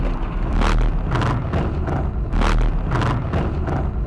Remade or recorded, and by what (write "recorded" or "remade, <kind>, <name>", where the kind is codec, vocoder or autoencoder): recorded